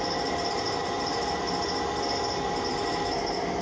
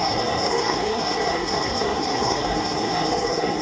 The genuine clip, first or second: first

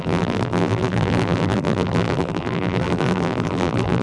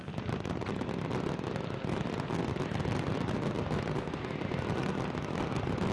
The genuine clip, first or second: second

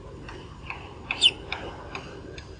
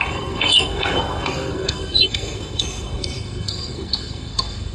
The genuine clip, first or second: first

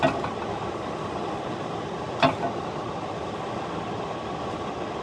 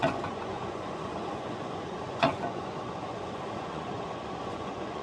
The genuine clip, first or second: first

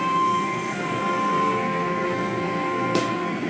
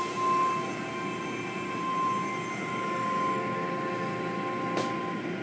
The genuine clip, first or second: second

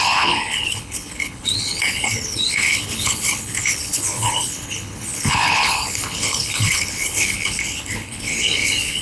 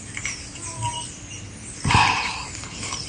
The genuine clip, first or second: second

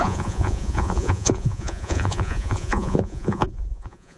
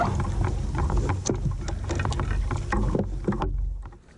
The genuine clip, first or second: second